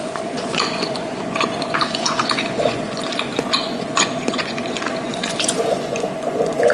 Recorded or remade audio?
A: remade